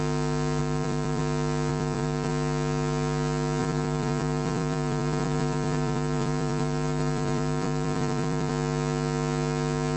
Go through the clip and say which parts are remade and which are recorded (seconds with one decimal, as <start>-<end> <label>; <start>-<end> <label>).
0.0-0.6 recorded; 0.6-1.2 remade; 1.2-1.7 recorded; 1.7-2.3 remade; 2.3-3.6 recorded; 3.6-8.5 remade; 8.5-10.0 recorded